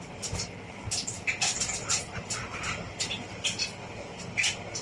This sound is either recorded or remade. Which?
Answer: recorded